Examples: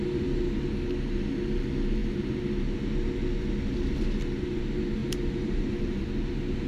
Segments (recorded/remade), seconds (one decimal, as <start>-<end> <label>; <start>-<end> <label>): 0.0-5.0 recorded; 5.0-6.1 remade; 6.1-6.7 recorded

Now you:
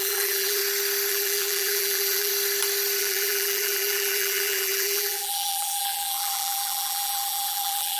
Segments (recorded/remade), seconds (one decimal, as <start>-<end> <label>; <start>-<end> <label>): 0.0-0.6 remade; 0.6-1.1 recorded; 1.1-2.3 remade; 2.3-3.0 recorded; 3.0-8.0 remade

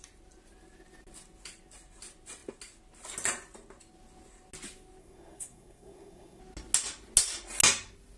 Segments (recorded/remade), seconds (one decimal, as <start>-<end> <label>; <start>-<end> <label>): 0.0-5.0 recorded; 5.0-6.4 remade; 6.4-8.2 recorded

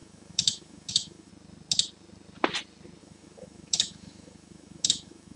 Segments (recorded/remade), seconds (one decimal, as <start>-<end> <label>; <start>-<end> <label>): 0.0-1.3 remade; 1.3-3.0 recorded; 3.0-5.4 remade

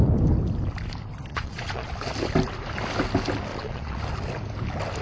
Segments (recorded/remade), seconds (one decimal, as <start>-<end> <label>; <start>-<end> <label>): 0.0-1.3 recorded; 1.3-1.9 remade; 1.9-3.5 recorded; 3.5-4.0 remade; 4.0-5.0 recorded

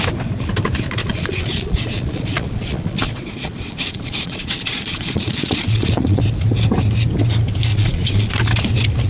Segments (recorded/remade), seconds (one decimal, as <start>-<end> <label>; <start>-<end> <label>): 0.0-1.0 recorded; 1.0-6.2 remade; 6.2-7.7 recorded; 7.7-8.3 remade; 8.3-9.1 recorded

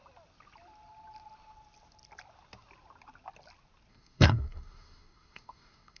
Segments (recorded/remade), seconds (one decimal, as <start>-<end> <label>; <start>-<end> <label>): 0.0-3.9 recorded; 3.9-6.0 remade